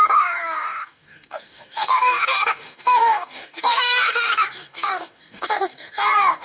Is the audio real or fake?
fake